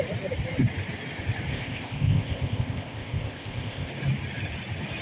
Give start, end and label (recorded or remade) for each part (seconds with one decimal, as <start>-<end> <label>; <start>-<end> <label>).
0.0-1.5 recorded; 1.5-3.9 remade; 3.9-5.0 recorded